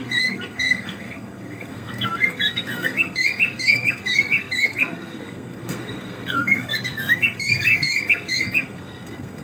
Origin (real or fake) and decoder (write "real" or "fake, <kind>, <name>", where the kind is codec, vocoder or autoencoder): fake, codec, SNAC